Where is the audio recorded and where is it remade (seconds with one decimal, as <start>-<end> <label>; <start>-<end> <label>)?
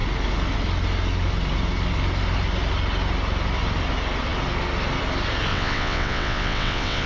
0.0-5.5 recorded; 5.5-7.1 remade